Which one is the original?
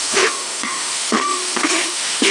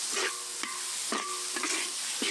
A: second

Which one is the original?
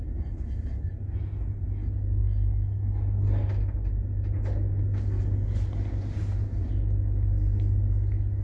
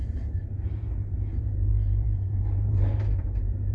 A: first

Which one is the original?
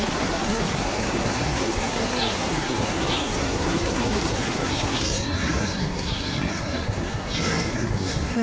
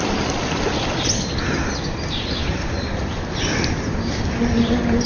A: second